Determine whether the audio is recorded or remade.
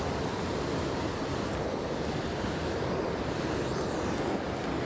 recorded